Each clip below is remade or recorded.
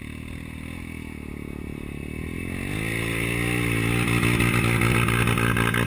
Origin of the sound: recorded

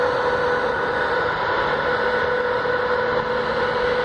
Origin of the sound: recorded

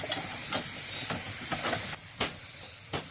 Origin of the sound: recorded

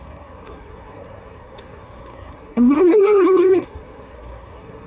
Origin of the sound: remade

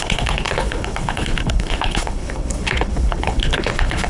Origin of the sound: remade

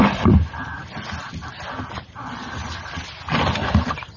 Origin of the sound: recorded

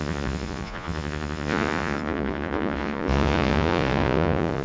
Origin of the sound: remade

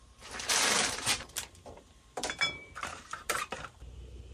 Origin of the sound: remade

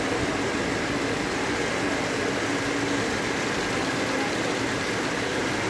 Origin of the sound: recorded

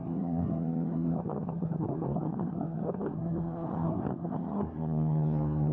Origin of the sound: remade